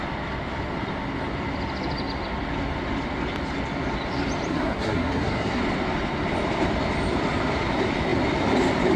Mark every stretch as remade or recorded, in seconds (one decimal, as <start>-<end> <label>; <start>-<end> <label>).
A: 0.0-4.5 recorded; 4.5-5.6 remade; 5.6-9.0 recorded